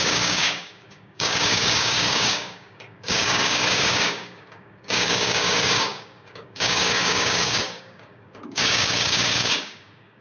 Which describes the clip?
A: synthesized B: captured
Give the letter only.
A